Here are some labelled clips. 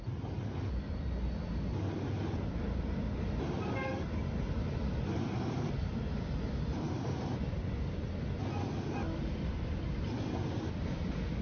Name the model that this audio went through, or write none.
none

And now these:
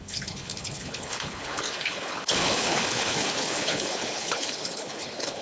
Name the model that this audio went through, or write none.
codec, HILCodec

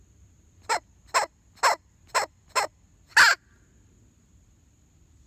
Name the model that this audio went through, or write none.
none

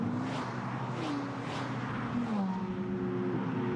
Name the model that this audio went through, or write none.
none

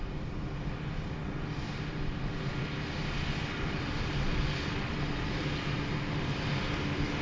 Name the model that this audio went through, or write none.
none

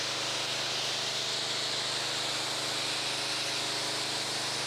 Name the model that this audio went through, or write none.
none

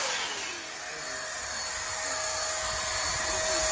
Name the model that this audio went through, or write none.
none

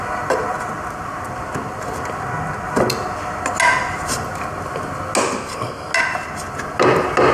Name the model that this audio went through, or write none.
none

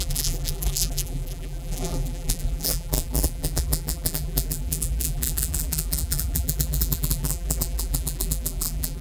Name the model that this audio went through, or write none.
vocoder, BigVGAN v2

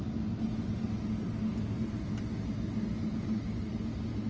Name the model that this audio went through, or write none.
none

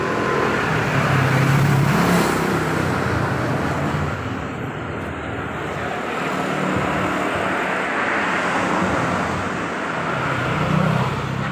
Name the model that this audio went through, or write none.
none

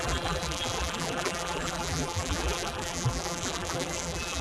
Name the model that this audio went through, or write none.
vocoder, BigVGAN v2